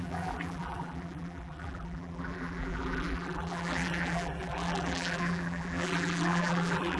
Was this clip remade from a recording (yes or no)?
yes